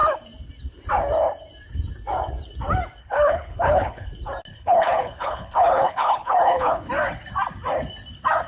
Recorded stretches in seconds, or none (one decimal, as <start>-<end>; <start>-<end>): 0.0-3.0; 4.1-4.5; 6.9-8.5